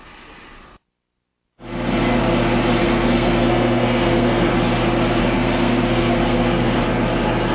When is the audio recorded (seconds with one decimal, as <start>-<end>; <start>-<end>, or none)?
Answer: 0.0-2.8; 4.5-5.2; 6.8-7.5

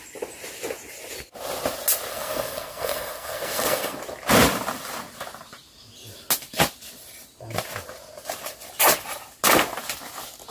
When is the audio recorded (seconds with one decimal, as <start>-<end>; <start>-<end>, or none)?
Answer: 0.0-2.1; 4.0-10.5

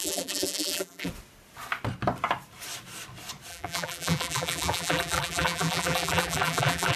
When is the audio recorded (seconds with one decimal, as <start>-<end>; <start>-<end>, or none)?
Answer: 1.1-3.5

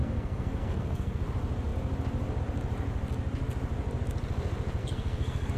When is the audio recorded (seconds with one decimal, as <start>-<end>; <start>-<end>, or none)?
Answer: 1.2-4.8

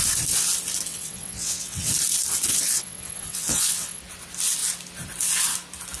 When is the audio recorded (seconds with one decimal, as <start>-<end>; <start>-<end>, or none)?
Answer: 0.0-0.9; 1.9-2.5; 4.0-6.0

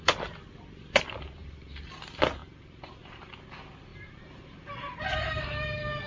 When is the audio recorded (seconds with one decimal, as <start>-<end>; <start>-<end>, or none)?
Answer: 0.0-1.4; 2.0-2.4; 3.3-3.9; 5.4-6.1